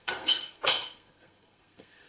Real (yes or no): no